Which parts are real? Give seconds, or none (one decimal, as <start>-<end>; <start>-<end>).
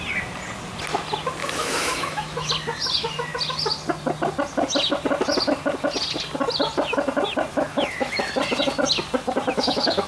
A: 0.0-1.4; 2.5-7.5; 8.2-9.5